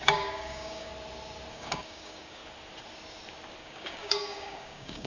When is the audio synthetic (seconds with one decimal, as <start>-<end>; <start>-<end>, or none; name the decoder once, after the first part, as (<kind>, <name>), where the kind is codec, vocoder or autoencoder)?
0.0-0.9 (codec, DAC); 1.5-2.4; 3.6-5.1